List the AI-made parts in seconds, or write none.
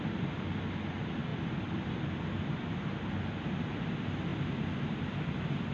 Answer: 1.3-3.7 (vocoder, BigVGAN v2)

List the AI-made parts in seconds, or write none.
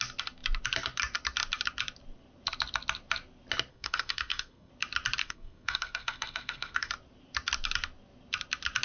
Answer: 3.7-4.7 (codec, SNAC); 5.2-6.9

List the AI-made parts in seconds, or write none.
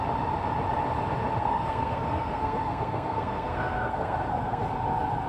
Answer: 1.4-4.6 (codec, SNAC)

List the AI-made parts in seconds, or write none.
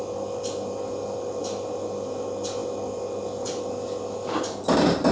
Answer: none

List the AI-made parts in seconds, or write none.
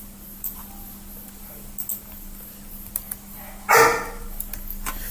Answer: none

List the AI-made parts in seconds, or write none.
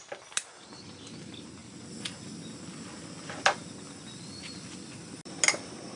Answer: none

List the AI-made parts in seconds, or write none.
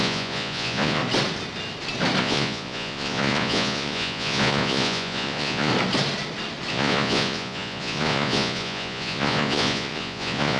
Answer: 0.0-1.0 (vocoder, Vocos); 2.2-5.7; 6.7-10.6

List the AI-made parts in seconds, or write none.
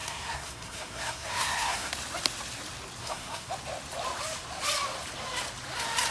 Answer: 0.0-1.9 (codec, SNAC); 3.0-3.5